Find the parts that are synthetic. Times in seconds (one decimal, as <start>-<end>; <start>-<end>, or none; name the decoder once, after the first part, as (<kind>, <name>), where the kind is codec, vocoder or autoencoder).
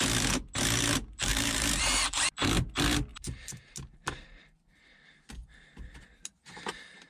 1.3-2.3 (vocoder, BigVGAN v2); 3.1-4.2